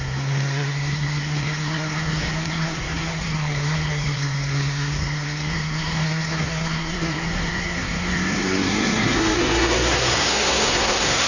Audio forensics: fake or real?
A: fake